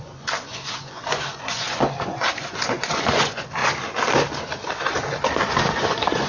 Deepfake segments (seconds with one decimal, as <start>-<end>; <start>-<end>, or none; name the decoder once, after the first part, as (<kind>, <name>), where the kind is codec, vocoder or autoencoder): 0.0-3.6 (vocoder, Vocos); 5.5-6.3